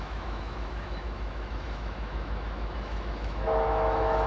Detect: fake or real fake